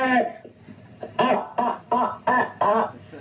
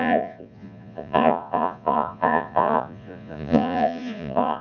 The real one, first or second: first